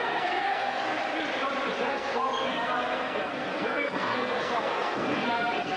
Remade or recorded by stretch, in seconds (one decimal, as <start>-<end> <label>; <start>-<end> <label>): 0.0-1.0 remade; 1.0-1.8 recorded; 1.8-5.8 remade